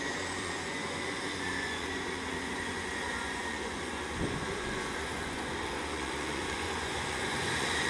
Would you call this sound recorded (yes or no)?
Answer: no